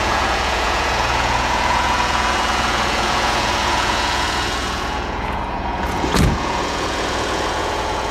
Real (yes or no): no